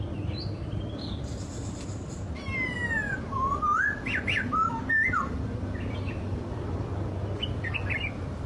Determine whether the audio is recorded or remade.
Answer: remade